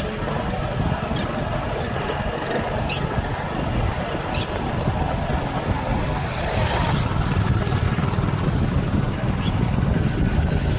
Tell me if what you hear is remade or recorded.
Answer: recorded